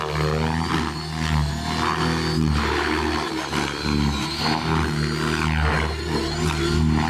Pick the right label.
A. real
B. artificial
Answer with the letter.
A